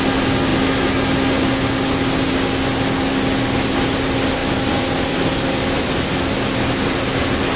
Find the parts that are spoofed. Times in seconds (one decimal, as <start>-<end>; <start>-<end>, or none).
4.4-6.2